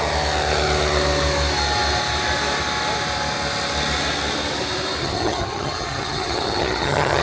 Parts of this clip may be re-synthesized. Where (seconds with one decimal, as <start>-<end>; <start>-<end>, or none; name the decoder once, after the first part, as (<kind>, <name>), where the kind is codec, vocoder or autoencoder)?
5.0-7.2 (vocoder, HiFi-GAN)

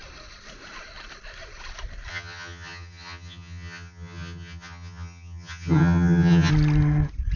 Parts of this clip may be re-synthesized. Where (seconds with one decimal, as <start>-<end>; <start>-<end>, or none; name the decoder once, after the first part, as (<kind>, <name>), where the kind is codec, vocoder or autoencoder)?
2.1-6.5 (vocoder, HiFi-GAN)

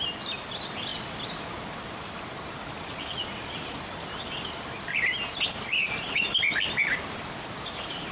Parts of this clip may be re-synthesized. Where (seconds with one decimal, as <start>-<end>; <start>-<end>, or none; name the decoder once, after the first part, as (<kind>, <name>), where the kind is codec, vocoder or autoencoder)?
none

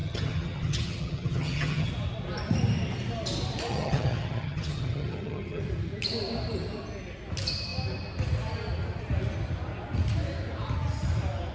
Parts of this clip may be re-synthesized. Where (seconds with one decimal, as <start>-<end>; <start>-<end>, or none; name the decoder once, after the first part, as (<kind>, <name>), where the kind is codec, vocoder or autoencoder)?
0.0-1.9 (vocoder, HiFi-GAN); 3.7-5.6